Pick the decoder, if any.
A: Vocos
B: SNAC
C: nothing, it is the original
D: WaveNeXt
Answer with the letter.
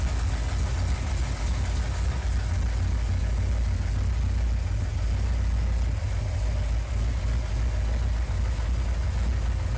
C